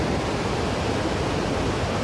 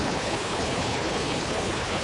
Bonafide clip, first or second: first